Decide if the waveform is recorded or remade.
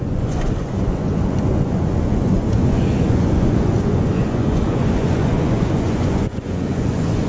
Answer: remade